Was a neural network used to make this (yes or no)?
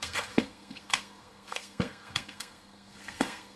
yes